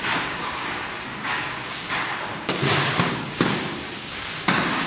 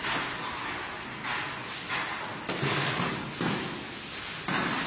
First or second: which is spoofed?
first